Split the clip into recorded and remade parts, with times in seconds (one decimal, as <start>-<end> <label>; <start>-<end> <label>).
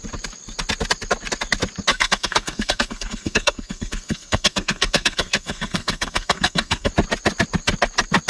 0.0-1.9 recorded; 1.9-6.9 remade; 6.9-8.3 recorded